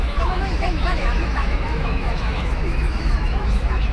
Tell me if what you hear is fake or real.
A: fake